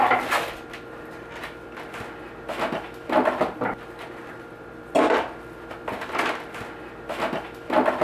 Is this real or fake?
real